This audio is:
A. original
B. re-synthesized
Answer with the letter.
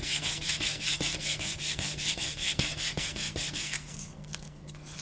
B